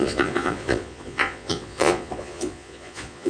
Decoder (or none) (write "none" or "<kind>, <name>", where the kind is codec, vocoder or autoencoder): vocoder, Vocos